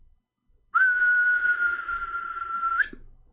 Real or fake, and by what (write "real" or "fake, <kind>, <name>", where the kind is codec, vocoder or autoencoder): real